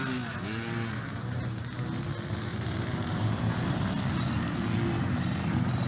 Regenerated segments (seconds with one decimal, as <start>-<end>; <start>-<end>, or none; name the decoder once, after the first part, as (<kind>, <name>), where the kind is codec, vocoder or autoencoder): 2.5-3.8 (vocoder, BigVGAN v2)